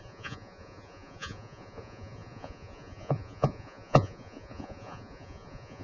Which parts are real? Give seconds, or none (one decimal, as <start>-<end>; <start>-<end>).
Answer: none